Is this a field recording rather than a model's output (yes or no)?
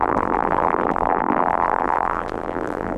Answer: no